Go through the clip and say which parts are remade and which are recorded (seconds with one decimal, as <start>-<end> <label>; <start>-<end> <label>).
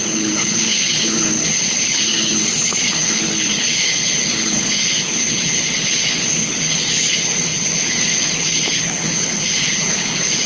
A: 0.0-10.5 remade